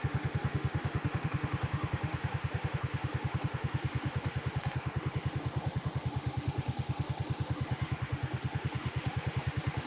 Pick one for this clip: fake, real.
fake